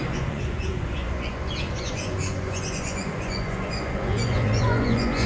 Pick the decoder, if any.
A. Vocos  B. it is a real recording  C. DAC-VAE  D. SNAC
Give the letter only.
A